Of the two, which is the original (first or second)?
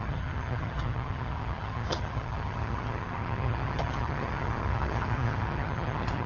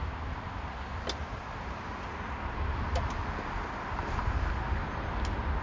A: second